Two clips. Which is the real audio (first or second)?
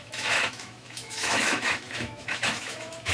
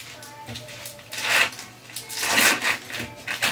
second